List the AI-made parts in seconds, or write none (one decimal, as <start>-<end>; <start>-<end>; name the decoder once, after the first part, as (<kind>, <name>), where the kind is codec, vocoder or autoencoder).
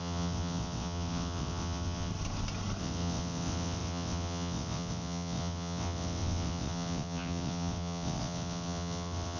0.0-2.1 (vocoder, WaveNeXt); 2.8-9.4